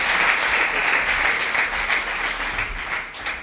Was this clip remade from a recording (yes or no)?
no